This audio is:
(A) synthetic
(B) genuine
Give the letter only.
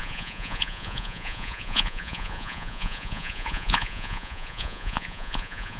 A